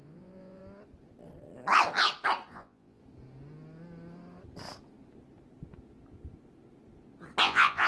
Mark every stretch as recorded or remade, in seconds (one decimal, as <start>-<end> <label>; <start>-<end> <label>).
0.0-0.6 remade; 0.6-2.5 recorded; 2.5-3.0 remade; 3.0-7.4 recorded; 7.4-7.9 remade